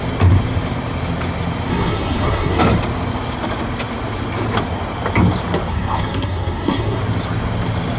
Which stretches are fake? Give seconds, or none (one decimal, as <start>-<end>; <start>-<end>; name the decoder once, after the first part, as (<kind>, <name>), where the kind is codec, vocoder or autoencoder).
1.7-2.6 (codec, SNAC); 5.7-7.0